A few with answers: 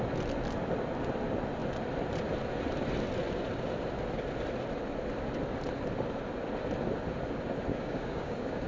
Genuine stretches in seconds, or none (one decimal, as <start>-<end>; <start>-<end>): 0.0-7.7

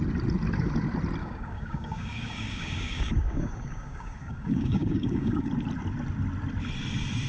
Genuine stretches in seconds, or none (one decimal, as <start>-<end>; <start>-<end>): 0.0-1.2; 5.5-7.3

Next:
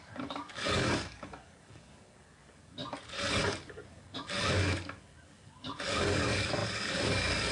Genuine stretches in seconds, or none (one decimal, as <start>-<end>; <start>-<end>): 2.8-3.4

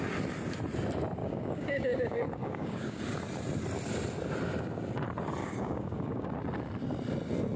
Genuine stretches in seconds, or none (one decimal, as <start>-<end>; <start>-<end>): 0.0-1.2; 3.0-5.4; 6.3-7.6

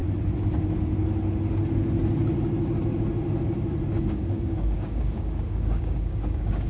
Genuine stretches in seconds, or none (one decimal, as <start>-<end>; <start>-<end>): 0.0-4.0